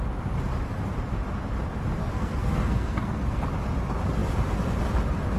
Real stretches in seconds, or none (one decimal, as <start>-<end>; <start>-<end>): 0.0-2.0; 3.4-5.4